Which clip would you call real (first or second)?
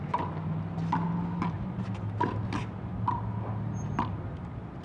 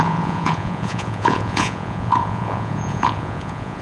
first